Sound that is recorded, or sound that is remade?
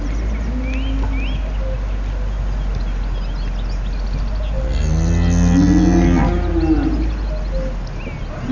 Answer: recorded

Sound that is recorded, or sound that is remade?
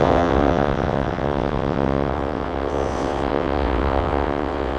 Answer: remade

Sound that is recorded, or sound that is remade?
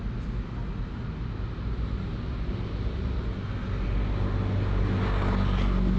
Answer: recorded